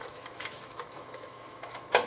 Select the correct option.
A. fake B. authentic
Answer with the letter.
A